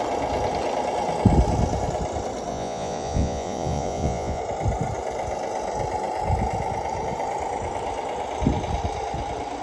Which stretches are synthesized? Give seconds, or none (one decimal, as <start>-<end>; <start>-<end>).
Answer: 2.5-4.4